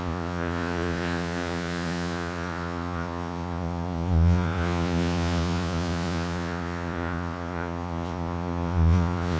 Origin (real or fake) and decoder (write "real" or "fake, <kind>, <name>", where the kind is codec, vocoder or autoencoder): fake, vocoder, Vocos